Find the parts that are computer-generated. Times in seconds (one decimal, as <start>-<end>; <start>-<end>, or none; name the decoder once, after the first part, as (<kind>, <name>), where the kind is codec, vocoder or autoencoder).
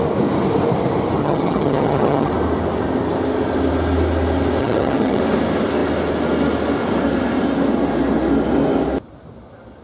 1.2-2.3 (vocoder, HiFi-GAN); 4.6-5.2